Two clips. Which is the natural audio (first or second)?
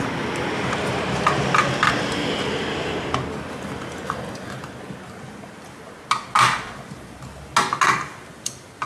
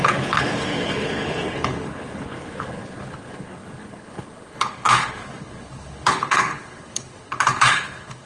first